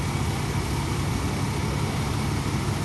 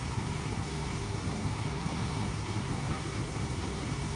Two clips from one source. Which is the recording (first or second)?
first